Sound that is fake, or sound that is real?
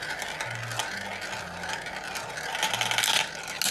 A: real